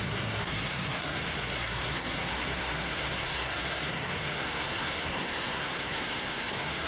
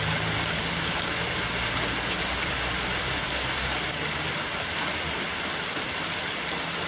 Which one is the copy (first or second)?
first